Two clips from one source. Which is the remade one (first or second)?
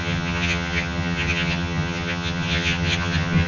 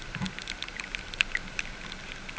first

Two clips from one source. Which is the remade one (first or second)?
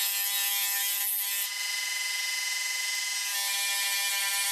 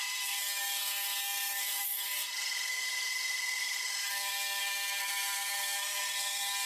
second